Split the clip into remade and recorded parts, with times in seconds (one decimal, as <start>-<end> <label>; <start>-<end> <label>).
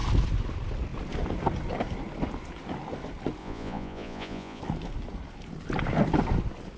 0.0-3.4 recorded; 3.4-4.6 remade; 4.6-6.8 recorded